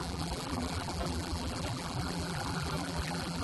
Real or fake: fake